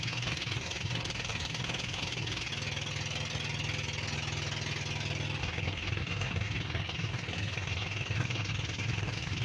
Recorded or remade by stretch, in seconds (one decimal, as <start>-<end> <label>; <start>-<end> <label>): 0.0-2.5 remade; 2.5-5.4 recorded; 5.4-9.4 remade